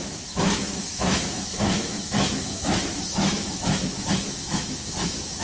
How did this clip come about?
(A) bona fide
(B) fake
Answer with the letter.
B